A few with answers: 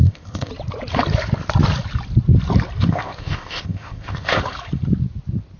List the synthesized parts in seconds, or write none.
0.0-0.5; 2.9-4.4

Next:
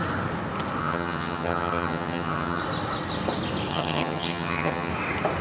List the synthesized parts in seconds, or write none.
0.8-2.6; 3.7-4.9

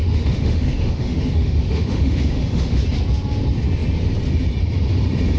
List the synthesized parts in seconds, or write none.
0.0-2.8

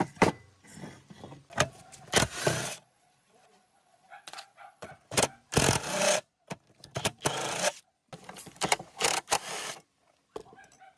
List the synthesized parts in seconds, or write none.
2.6-4.9

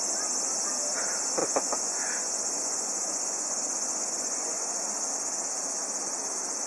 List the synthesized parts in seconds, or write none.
1.4-4.8

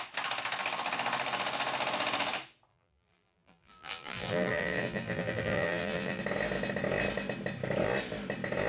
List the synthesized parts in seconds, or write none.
2.7-6.2